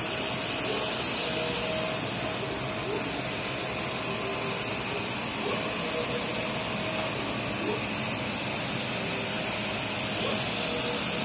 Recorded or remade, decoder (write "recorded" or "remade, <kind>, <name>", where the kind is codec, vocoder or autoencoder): recorded